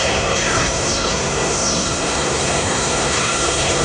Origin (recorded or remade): remade